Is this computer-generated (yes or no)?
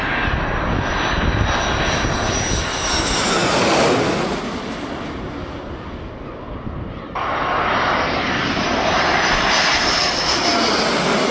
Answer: no